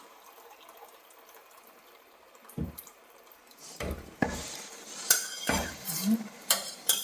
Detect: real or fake fake